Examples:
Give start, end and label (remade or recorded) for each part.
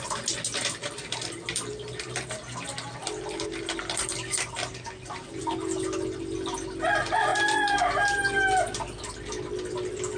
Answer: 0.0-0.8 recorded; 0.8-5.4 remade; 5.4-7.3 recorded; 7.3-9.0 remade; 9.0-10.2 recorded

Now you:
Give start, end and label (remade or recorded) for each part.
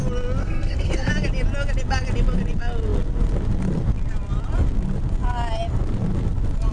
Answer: 0.0-0.4 recorded; 0.4-1.1 remade; 1.1-6.7 recorded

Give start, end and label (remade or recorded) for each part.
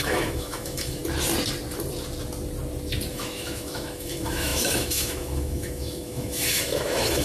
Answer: 0.0-1.0 remade; 1.0-3.1 recorded; 3.1-7.2 remade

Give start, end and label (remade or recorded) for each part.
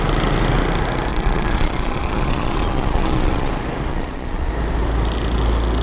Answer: 0.0-1.1 recorded; 1.1-3.5 remade; 3.5-3.9 recorded; 3.9-4.5 remade; 4.5-5.8 recorded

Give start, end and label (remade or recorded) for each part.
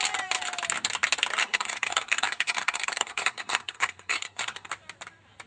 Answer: 0.0-1.4 recorded; 1.4-4.7 remade; 4.7-5.5 recorded